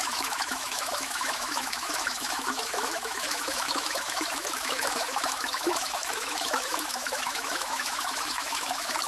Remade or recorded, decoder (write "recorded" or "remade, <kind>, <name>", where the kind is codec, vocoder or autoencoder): remade, autoencoder, DAC-VAE